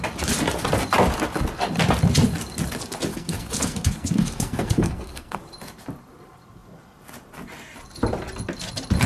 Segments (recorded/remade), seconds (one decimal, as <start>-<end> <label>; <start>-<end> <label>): 0.0-3.1 recorded; 3.1-5.4 remade; 5.4-9.1 recorded